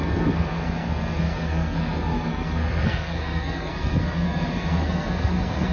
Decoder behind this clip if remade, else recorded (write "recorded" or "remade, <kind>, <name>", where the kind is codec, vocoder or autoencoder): remade, codec, SNAC